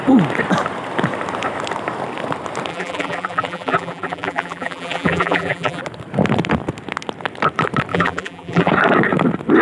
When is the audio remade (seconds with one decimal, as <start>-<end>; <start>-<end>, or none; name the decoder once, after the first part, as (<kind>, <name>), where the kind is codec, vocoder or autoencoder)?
2.7-5.8 (vocoder, BigVGAN v2); 7.9-8.7